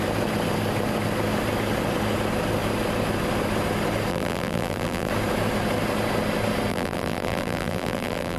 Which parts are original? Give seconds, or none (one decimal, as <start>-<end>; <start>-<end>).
0.0-4.1; 5.1-6.7